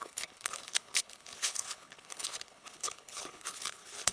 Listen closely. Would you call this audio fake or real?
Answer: fake